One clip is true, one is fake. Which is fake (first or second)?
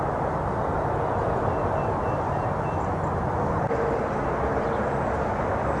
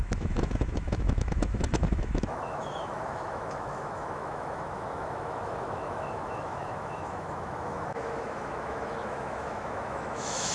second